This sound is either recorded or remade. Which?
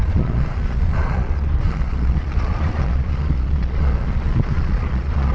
remade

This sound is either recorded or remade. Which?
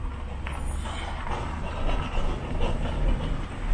recorded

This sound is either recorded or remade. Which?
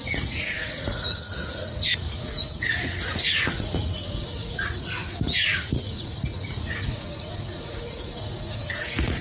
remade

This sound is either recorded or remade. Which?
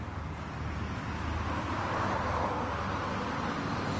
recorded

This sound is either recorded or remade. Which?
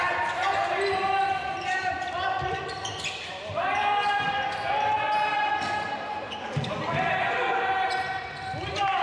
recorded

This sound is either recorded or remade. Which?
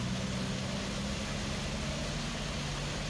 recorded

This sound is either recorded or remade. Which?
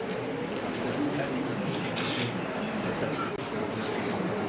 recorded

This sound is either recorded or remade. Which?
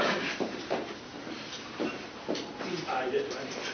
remade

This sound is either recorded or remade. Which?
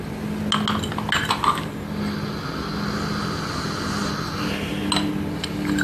recorded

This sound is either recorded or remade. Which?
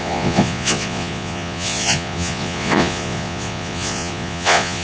remade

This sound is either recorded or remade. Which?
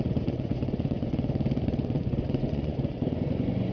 remade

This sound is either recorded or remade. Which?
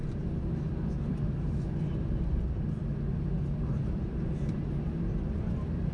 remade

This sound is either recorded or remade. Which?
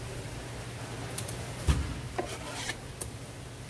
recorded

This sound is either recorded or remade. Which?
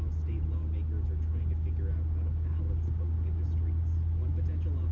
recorded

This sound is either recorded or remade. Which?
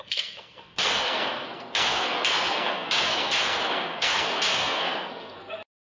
remade